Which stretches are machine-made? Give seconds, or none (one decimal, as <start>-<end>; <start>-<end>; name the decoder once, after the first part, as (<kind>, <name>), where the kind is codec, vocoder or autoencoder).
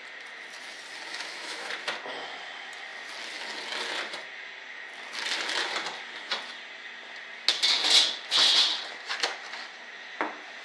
1.1-1.7 (autoencoder, DAC-VAE)